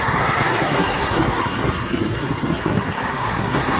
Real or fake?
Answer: fake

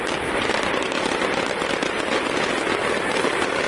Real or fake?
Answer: real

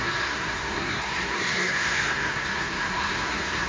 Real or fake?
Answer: fake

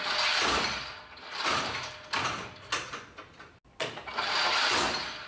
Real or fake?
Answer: real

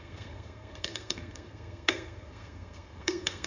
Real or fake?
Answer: fake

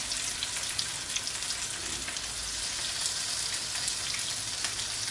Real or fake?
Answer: real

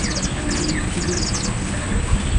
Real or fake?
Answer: real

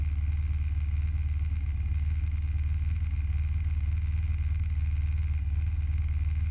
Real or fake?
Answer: real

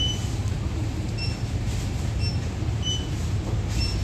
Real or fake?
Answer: real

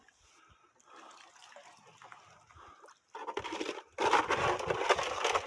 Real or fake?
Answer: real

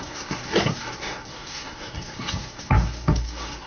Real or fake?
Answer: fake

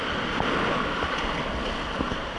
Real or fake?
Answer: real